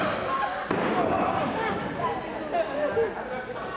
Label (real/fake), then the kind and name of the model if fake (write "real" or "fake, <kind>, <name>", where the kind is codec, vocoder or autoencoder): real